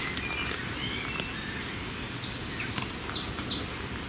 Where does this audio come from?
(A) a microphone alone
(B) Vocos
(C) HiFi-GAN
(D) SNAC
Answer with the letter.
A